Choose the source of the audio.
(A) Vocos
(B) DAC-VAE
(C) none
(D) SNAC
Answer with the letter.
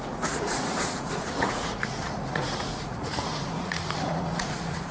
A